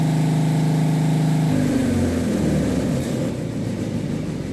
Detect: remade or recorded recorded